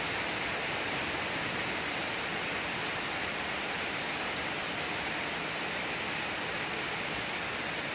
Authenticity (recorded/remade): remade